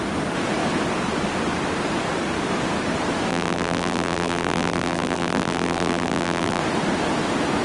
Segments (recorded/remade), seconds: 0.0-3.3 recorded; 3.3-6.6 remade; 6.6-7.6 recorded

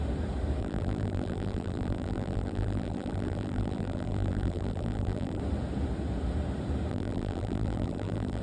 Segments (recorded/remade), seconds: 0.0-0.6 recorded; 0.6-5.4 remade; 5.4-6.9 recorded; 6.9-8.4 remade

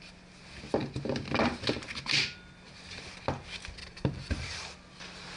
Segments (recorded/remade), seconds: 0.0-3.8 recorded; 3.8-4.3 remade; 4.3-5.4 recorded

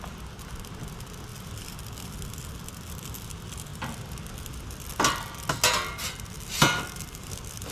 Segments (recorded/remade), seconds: 0.0-1.3 recorded; 1.3-1.8 remade; 1.8-7.7 recorded

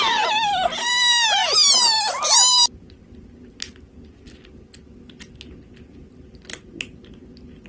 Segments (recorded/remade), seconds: 0.0-7.7 recorded

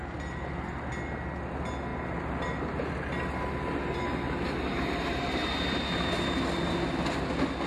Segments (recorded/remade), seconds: 0.0-1.9 recorded; 1.9-2.9 remade; 2.9-4.7 recorded; 4.7-5.6 remade; 5.6-7.7 recorded

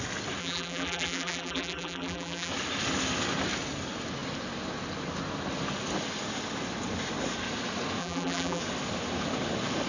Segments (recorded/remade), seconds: 0.0-0.4 recorded; 0.4-2.5 remade; 2.5-8.0 recorded; 8.0-8.6 remade; 8.6-9.9 recorded

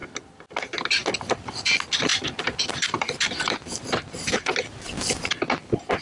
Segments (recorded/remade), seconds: 0.0-2.1 recorded; 2.1-4.3 remade; 4.3-6.0 recorded